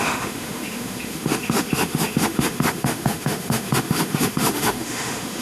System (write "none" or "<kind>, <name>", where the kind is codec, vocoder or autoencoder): autoencoder, DAC-VAE